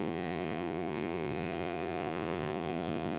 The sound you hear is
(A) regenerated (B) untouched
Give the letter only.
A